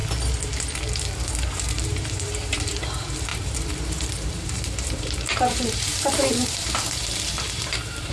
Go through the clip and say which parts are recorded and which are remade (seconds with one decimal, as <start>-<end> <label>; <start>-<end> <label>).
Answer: 0.0-0.6 recorded; 0.6-8.1 remade